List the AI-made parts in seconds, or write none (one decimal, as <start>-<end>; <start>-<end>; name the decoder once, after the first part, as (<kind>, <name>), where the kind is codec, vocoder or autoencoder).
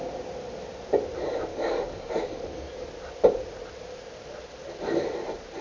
1.5-2.9 (codec, DAC)